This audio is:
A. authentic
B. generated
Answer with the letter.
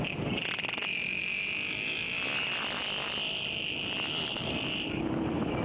A